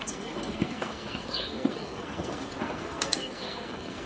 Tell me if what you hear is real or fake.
fake